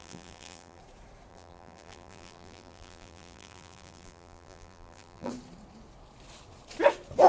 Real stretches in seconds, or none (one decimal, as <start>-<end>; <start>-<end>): 0.8-1.3; 5.3-7.3